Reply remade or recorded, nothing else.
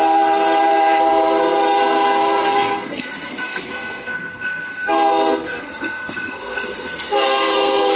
remade